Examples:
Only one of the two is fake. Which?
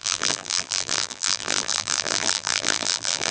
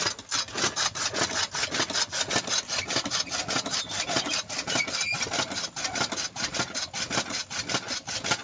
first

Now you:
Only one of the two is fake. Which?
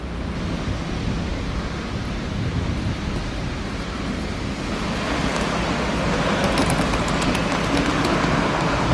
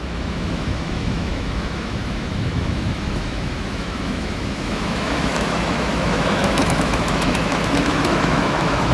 second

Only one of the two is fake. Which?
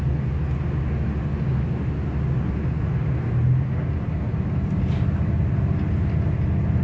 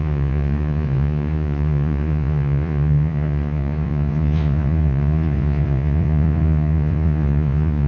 second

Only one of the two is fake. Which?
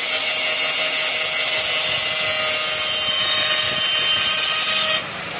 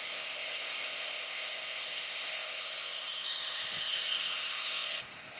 second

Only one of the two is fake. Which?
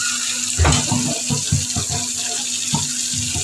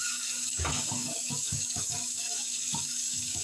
second